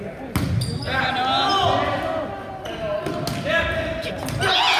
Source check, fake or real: real